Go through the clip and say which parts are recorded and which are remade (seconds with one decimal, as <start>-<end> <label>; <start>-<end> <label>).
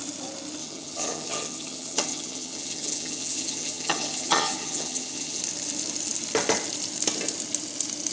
0.0-0.6 recorded; 0.6-5.4 remade; 5.4-8.1 recorded